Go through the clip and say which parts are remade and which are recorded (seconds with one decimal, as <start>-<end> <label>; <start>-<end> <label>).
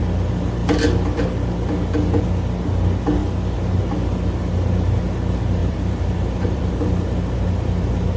0.0-3.2 recorded; 3.2-3.8 remade; 3.8-5.6 recorded; 5.6-6.7 remade; 6.7-8.2 recorded